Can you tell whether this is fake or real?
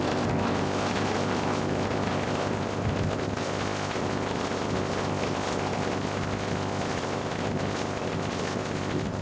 fake